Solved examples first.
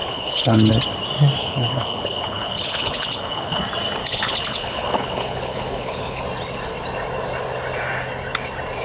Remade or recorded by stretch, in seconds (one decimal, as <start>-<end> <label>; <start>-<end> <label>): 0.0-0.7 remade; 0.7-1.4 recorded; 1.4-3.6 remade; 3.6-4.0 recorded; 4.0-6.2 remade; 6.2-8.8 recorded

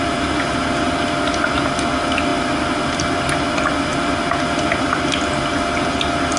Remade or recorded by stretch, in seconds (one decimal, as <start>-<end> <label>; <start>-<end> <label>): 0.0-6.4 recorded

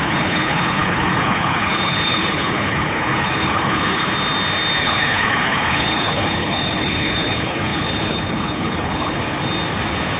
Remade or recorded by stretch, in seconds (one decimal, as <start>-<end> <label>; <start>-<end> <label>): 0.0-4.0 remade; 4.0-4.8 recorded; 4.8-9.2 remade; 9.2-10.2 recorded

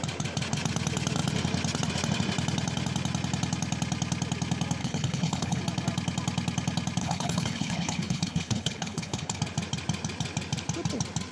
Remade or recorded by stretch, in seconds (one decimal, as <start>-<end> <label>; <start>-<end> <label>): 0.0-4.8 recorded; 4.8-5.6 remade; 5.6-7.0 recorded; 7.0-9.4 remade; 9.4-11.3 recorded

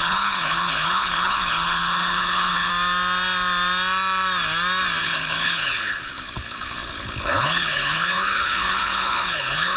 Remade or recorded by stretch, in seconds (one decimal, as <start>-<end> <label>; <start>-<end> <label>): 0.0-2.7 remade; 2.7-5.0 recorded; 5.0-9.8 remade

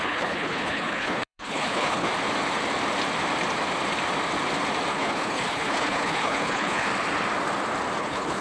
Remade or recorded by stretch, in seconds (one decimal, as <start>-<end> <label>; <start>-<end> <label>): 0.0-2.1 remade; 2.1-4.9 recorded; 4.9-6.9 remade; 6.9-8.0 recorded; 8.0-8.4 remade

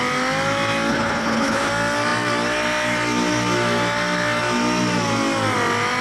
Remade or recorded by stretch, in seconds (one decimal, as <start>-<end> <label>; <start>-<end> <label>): 0.0-0.9 recorded; 0.9-1.7 remade; 1.7-6.0 recorded